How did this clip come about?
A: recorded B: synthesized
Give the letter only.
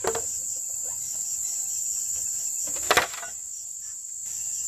A